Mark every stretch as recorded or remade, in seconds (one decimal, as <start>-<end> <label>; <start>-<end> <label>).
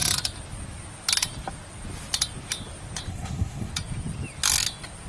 0.0-3.1 recorded; 3.1-3.7 remade; 3.7-5.1 recorded